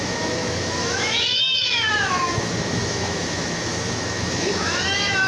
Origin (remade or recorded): remade